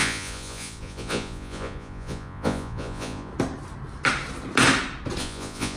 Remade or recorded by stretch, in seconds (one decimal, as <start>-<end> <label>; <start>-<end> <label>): 0.0-3.3 remade; 3.3-5.2 recorded; 5.2-5.8 remade